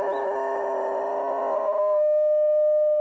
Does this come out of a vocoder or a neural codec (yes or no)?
no